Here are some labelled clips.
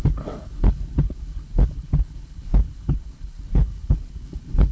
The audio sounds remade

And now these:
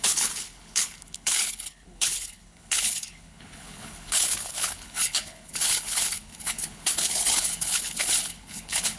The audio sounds remade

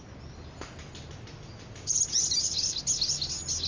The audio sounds recorded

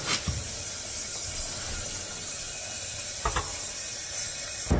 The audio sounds recorded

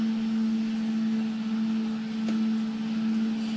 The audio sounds recorded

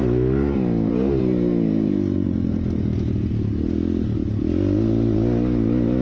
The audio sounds recorded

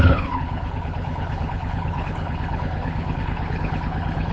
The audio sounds remade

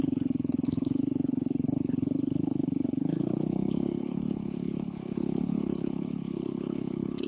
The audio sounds remade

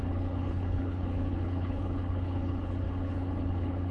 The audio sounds remade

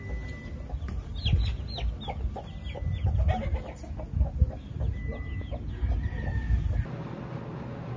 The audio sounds recorded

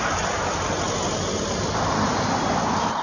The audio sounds recorded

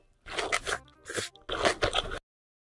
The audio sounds recorded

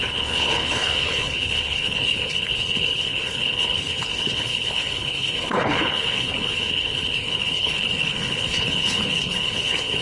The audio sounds remade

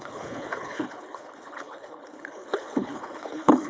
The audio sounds remade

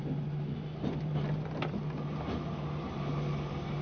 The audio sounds recorded